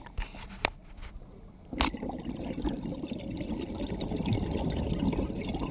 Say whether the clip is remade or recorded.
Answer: recorded